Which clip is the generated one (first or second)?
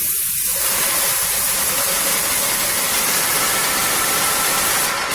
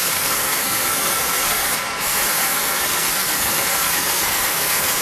second